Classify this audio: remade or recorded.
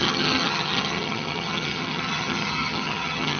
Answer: remade